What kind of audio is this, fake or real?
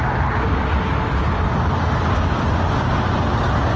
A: real